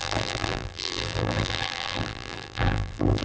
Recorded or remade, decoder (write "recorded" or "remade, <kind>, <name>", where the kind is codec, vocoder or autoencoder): remade, vocoder, BigVGAN v2